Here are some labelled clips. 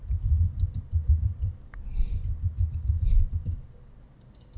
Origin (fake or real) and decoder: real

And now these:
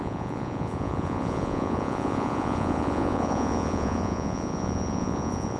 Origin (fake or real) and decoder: fake, vocoder, Vocos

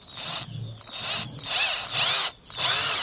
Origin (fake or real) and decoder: real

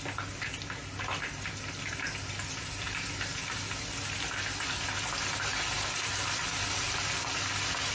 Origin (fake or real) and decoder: real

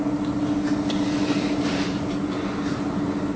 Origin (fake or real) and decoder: real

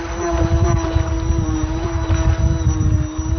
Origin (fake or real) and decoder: real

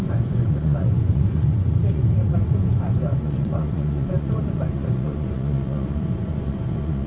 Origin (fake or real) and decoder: fake, vocoder, Vocos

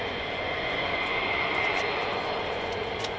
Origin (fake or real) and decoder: fake, vocoder, Vocos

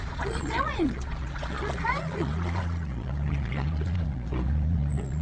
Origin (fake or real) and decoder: fake, vocoder, Vocos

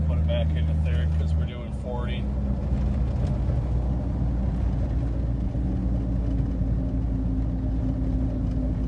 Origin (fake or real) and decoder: real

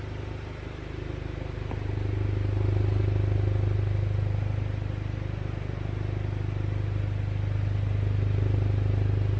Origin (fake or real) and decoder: real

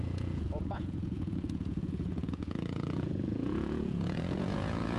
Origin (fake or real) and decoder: fake, vocoder, Vocos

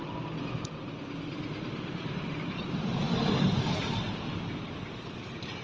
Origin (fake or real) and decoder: real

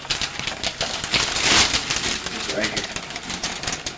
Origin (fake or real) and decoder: real